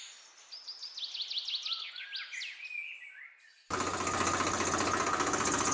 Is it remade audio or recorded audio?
recorded